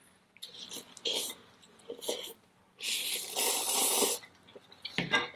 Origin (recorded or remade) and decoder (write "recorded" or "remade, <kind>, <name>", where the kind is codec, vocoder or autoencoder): recorded